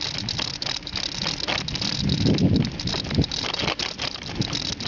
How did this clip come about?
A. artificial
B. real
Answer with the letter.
B